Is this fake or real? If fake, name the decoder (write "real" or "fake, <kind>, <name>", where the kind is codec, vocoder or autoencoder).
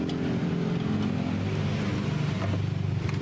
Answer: real